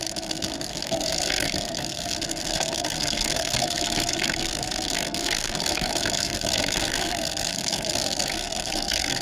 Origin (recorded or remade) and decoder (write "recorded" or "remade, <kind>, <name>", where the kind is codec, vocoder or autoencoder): remade, codec, SNAC